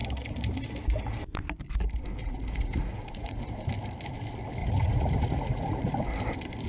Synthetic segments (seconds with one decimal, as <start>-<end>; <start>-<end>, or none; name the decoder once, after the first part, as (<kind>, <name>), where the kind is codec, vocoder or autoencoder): 2.2-3.4 (vocoder, Vocos); 4.6-5.9